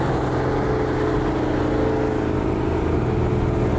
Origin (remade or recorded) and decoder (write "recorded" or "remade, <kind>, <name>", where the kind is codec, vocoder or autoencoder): recorded